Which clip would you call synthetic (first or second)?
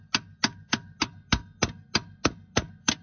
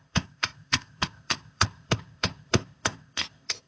second